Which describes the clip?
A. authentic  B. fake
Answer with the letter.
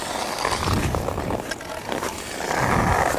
A